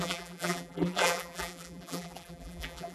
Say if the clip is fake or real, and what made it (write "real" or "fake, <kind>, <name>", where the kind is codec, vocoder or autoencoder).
fake, vocoder, BigVGAN v2